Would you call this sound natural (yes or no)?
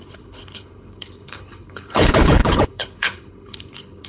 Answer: no